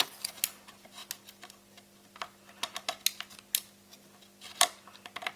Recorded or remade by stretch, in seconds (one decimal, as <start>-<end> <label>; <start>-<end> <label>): 0.0-5.4 recorded